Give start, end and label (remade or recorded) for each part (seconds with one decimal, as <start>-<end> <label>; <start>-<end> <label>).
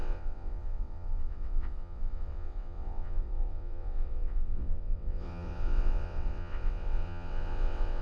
0.0-8.0 remade